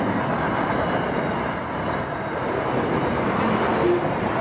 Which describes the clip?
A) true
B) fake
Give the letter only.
A